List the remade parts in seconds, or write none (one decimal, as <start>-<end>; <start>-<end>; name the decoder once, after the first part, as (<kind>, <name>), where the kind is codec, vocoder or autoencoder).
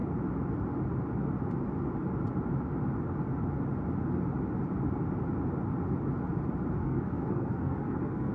6.8-8.3 (codec, SNAC)